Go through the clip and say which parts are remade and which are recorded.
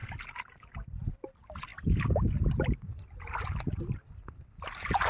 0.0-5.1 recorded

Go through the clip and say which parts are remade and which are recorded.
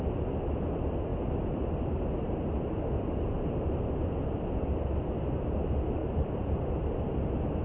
0.0-6.0 recorded; 6.0-6.6 remade; 6.6-7.6 recorded